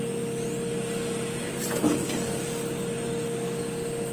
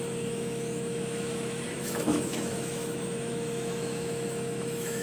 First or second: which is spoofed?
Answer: second